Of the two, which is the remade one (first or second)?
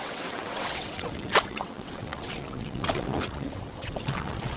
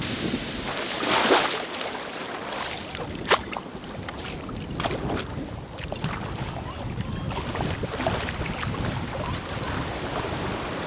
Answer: first